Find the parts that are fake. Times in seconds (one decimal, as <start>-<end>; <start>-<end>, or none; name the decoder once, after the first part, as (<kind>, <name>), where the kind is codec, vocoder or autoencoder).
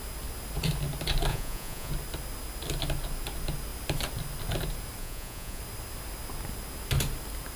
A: 1.3-1.9 (vocoder, Vocos); 5.0-5.6